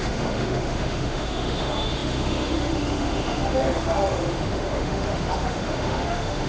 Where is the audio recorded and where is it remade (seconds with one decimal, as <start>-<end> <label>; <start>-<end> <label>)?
0.0-6.5 remade